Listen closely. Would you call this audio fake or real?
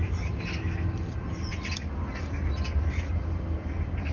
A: real